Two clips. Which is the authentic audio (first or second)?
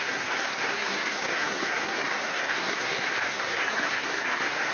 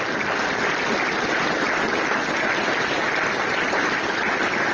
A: second